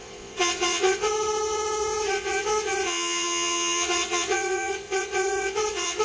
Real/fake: fake